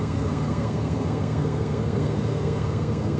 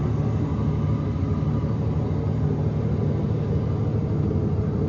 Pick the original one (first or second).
second